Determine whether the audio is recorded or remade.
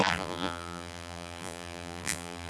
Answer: remade